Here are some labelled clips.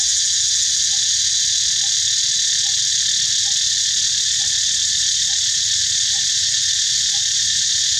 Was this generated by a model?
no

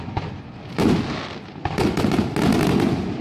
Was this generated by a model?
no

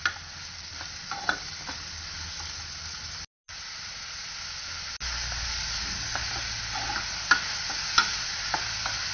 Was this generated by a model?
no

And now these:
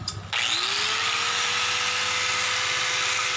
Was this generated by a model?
no